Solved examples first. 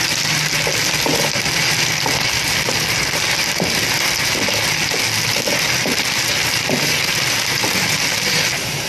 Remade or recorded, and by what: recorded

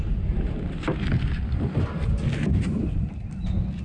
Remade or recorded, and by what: recorded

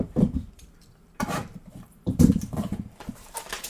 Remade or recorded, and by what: remade, vocoder, BigVGAN v2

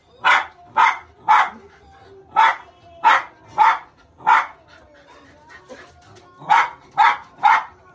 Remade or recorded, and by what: recorded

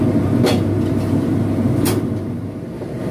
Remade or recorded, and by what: recorded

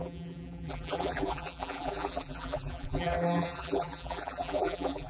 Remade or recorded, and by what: remade, vocoder, BigVGAN v2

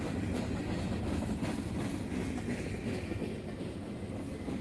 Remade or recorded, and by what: recorded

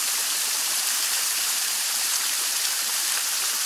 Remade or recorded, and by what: remade, vocoder, BigVGAN v2